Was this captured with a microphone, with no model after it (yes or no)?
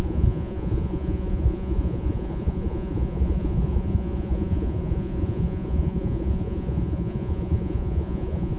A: no